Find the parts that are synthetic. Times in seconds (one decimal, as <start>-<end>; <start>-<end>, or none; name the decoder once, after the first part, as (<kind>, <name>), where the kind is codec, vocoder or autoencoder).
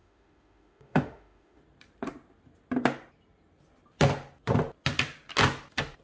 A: 0.0-1.6 (autoencoder, DAC-VAE)